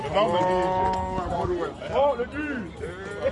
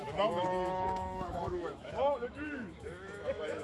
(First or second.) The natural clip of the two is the first